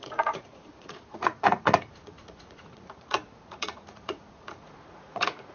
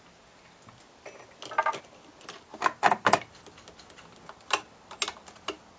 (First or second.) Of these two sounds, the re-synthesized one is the first